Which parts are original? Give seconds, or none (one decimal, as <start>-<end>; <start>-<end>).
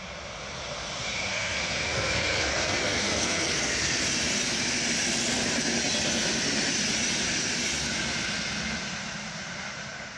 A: 0.0-1.3; 4.0-10.2